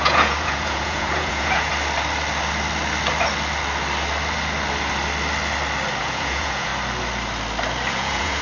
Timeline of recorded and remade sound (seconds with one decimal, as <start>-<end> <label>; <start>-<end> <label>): 0.0-1.7 remade; 1.7-6.0 recorded; 6.0-6.7 remade; 6.7-7.9 recorded; 7.9-8.4 remade